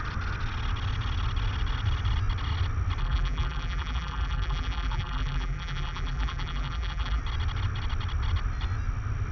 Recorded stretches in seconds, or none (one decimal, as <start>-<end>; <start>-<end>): 0.0-3.0; 7.2-9.3

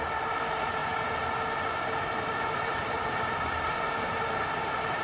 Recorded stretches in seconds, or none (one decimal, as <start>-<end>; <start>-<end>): 0.8-1.6

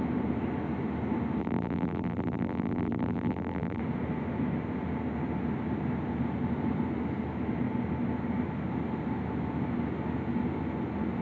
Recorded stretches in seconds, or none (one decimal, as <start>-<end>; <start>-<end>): 0.0-1.4; 3.8-11.2

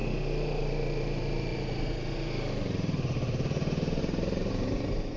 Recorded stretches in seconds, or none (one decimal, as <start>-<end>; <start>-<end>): none

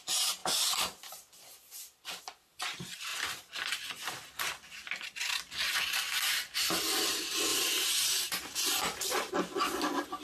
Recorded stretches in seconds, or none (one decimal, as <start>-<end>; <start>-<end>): 0.0-7.5; 9.3-10.2

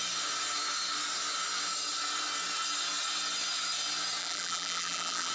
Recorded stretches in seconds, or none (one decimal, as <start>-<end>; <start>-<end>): 0.0-4.2